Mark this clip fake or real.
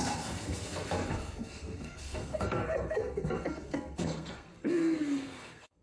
fake